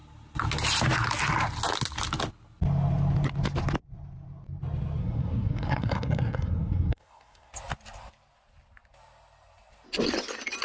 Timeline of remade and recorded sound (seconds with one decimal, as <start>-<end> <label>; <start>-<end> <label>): 0.0-5.0 recorded; 5.0-7.5 remade; 7.5-10.6 recorded